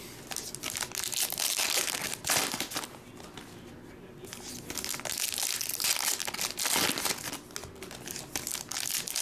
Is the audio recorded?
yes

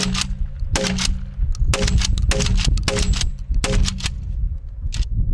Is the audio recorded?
yes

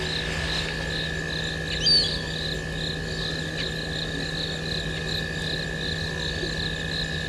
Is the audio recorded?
yes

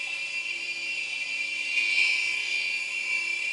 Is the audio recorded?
yes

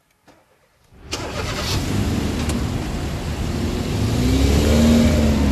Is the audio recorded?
yes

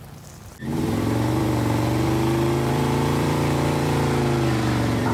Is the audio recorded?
no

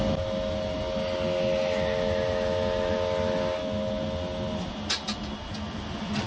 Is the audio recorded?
yes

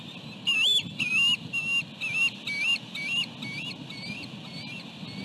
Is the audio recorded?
yes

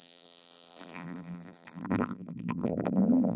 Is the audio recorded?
no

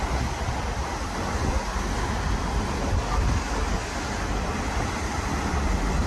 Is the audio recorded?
yes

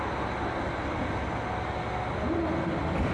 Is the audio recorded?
yes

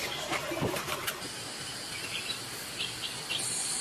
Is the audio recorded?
no